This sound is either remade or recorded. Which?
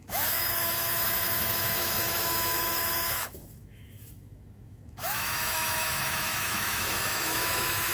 remade